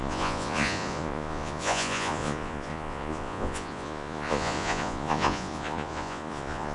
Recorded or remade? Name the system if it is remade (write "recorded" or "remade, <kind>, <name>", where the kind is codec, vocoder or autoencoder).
remade, vocoder, Vocos